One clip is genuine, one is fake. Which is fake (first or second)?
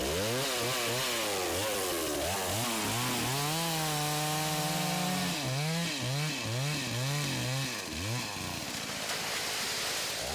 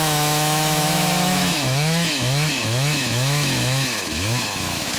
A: second